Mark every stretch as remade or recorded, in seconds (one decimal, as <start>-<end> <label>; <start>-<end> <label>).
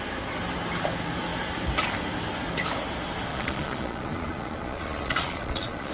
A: 0.0-3.3 recorded; 3.3-5.9 remade